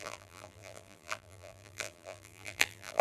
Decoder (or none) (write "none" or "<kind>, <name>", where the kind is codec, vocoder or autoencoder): vocoder, BigVGAN v2